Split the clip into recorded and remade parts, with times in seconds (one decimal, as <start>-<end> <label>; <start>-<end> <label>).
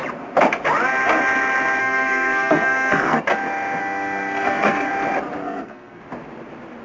0.0-1.8 recorded; 1.8-3.2 remade; 3.2-3.8 recorded; 3.8-4.9 remade; 4.9-5.4 recorded; 5.4-6.0 remade; 6.0-6.8 recorded